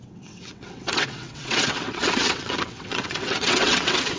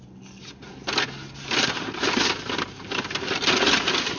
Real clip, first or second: second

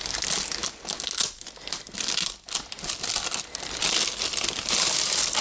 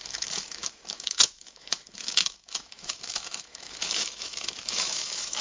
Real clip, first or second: first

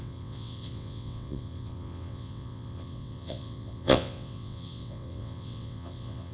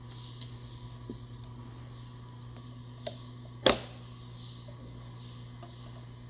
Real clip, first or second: second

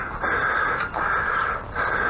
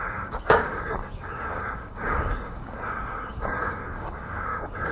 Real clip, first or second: first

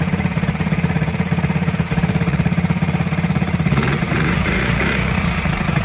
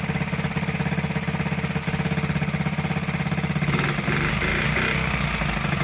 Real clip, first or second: second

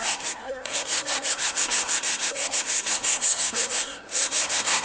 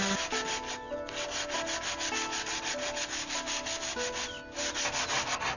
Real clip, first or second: second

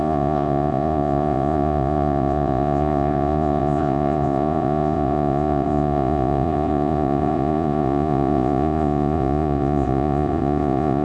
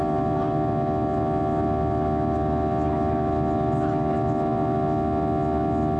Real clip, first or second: second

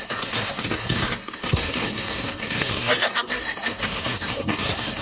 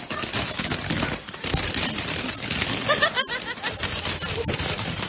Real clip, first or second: second